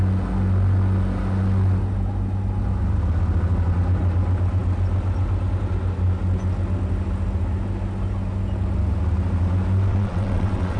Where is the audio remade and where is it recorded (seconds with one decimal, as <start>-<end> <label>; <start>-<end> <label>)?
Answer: 0.0-9.9 recorded; 9.9-10.8 remade